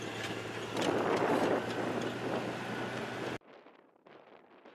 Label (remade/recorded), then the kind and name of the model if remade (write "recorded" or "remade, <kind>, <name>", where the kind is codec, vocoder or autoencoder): recorded